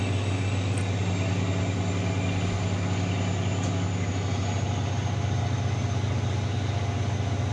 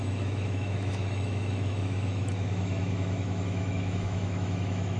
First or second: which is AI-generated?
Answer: second